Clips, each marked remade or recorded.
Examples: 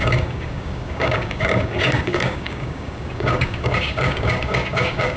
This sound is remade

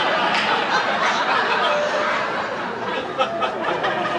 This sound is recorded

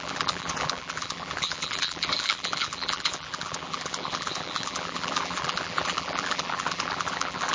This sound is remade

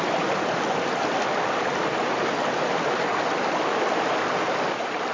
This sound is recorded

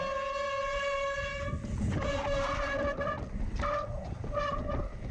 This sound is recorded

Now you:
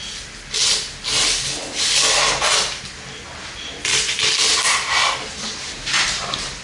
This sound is recorded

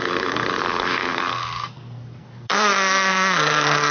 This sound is remade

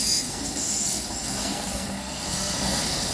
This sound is remade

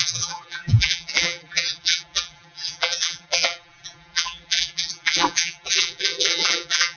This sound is remade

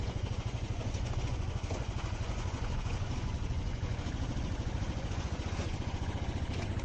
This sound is remade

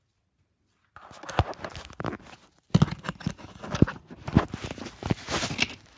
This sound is recorded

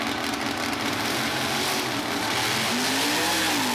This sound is recorded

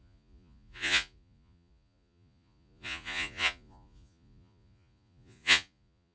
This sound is remade